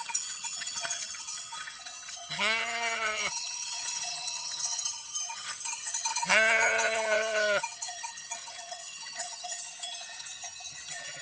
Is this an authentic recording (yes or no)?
no